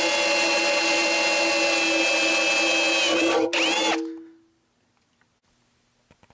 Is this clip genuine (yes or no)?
yes